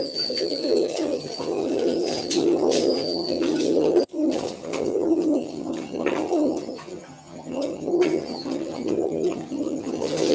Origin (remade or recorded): remade